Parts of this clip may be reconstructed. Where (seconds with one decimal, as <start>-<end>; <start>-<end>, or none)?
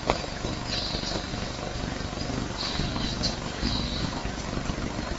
1.3-4.4